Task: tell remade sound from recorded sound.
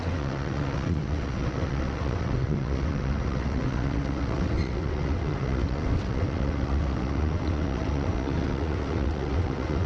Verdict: remade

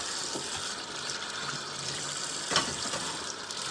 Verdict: recorded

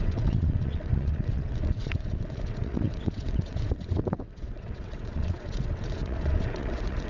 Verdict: remade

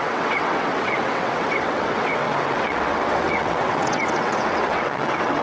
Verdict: remade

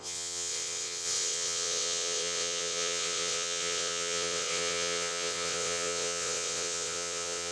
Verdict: remade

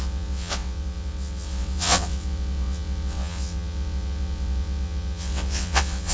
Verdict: remade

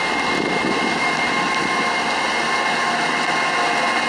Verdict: recorded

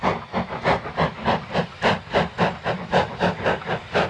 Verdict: recorded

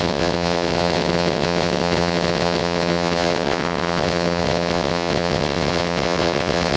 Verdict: remade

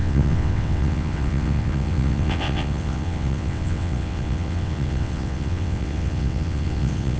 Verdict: remade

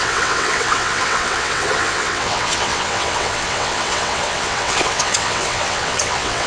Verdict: remade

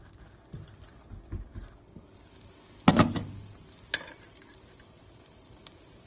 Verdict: recorded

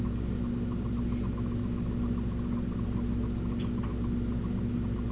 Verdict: recorded